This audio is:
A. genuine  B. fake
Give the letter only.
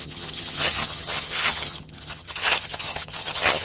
B